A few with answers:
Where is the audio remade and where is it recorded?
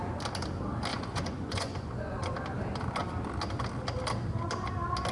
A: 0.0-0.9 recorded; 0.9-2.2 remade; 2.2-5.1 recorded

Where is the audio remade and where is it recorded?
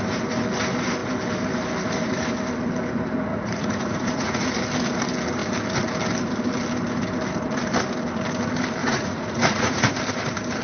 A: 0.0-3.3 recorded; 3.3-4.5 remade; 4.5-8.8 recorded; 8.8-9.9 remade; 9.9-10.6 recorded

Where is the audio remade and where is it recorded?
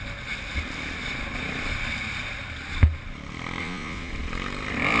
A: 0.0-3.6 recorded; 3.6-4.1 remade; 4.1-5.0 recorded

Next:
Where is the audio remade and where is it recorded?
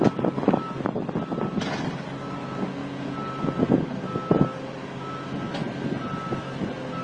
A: 0.0-2.8 recorded; 2.8-3.3 remade; 3.3-7.0 recorded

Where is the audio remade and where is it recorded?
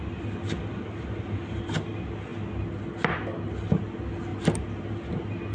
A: 0.0-5.5 recorded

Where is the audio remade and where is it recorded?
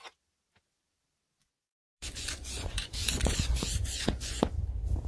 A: 0.0-1.4 recorded; 1.4-4.5 remade; 4.5-5.1 recorded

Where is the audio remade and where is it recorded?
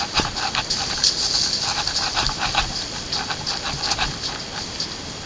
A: 0.0-5.3 recorded